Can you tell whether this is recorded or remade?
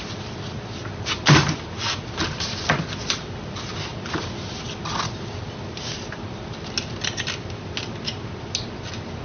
recorded